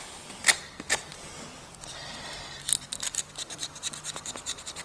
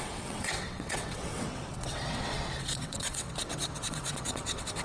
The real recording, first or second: first